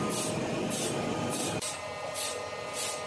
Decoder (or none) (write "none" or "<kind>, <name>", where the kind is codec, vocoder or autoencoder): none